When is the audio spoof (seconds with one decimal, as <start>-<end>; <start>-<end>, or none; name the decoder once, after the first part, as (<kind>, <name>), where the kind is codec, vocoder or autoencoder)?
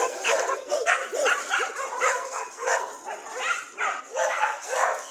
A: 0.0-1.0 (codec, SNAC); 2.1-2.9; 4.0-5.1